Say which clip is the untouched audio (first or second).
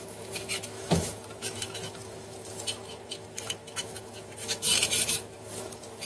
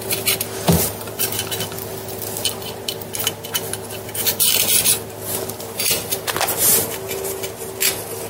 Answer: second